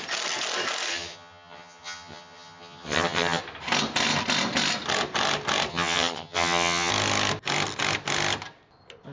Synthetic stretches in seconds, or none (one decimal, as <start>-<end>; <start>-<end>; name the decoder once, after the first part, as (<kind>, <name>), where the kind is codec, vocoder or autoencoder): 0.9-3.4 (vocoder, HiFi-GAN); 5.7-6.9

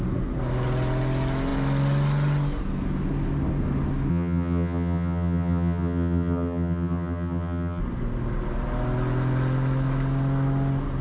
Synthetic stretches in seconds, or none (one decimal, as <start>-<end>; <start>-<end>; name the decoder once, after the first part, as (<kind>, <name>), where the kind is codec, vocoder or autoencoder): 4.1-7.8 (vocoder, HiFi-GAN)

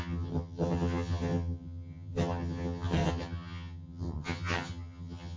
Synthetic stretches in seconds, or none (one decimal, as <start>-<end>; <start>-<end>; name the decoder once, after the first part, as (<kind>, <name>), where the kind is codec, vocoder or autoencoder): 0.0-5.4 (vocoder, HiFi-GAN)

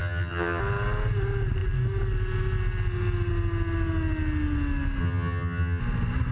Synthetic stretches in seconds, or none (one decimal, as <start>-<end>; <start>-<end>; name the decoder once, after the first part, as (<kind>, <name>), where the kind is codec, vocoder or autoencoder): 0.0-0.6 (vocoder, HiFi-GAN); 5.0-5.8

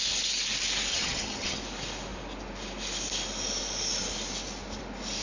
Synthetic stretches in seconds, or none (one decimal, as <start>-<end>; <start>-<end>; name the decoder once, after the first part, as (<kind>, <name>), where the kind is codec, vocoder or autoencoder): 0.9-1.6 (vocoder, HiFi-GAN)

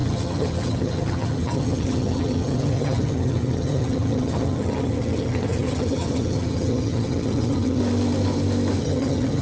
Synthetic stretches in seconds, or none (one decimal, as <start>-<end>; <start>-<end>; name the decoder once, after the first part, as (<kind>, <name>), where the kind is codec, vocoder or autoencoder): 0.0-7.8 (vocoder, HiFi-GAN); 8.8-9.4

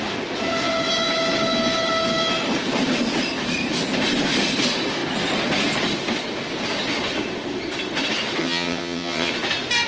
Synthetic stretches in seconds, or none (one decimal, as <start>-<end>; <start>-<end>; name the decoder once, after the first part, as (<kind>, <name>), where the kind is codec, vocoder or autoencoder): 8.4-9.3 (vocoder, HiFi-GAN)

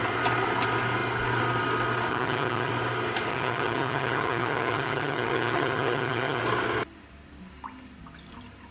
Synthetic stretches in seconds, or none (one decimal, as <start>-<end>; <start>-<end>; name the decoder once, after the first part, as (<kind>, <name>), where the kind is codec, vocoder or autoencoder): 2.1-2.7 (vocoder, HiFi-GAN); 3.3-6.4